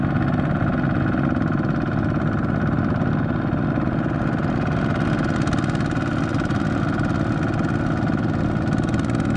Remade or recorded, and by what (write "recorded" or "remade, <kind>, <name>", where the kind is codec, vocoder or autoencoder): recorded